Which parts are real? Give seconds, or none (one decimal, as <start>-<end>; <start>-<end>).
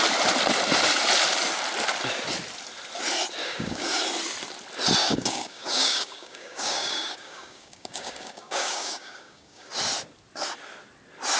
0.0-3.4; 4.0-5.0; 9.7-11.4